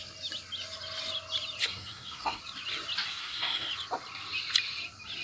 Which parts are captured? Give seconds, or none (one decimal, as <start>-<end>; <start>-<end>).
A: 0.0-1.6; 2.4-3.2; 3.7-5.2